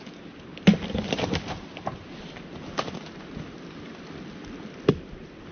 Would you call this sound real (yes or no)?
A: yes